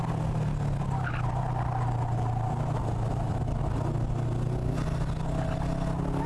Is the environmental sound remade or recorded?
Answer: recorded